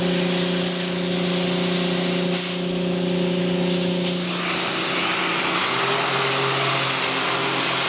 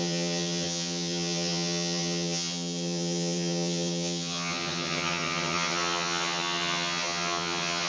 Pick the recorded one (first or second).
first